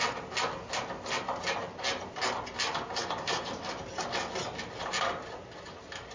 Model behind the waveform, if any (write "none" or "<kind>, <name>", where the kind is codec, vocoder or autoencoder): none